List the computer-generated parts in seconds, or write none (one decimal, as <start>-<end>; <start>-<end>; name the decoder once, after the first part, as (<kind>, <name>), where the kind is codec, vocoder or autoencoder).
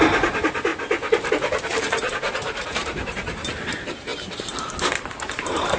0.0-0.7 (vocoder, BigVGAN v2); 1.3-5.8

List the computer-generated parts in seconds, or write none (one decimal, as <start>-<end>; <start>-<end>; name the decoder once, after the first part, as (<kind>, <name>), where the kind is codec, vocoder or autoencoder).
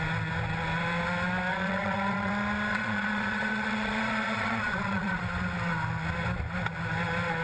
1.5-2.3 (vocoder, Vocos); 2.7-5.2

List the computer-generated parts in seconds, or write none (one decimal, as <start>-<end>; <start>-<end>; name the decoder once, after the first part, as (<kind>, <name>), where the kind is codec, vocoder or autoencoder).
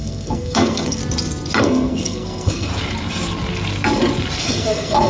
0.0-1.0 (codec, SNAC); 1.6-2.7; 4.4-5.1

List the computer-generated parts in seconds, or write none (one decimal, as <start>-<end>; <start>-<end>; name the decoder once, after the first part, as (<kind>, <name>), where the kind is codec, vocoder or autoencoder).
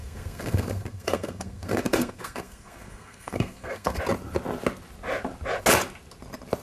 0.0-4.0 (codec, SNAC)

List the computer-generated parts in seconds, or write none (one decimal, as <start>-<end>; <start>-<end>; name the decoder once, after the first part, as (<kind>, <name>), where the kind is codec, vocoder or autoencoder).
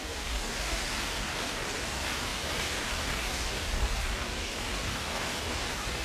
0.0-6.0 (codec, DAC)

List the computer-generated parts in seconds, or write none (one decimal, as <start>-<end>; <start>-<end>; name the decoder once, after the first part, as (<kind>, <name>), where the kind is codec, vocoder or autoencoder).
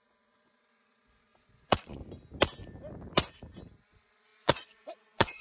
0.0-2.0 (vocoder, Vocos); 3.8-5.4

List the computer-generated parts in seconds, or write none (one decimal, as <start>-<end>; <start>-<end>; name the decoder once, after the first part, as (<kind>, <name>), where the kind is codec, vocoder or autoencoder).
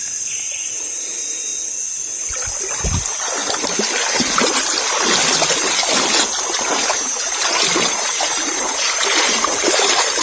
0.7-1.5 (vocoder, BigVGAN v2); 6.4-10.2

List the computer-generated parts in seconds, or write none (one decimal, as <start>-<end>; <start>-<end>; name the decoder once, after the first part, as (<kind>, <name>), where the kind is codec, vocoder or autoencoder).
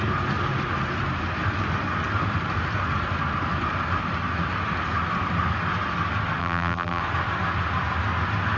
6.4-7.0 (vocoder, BigVGAN v2)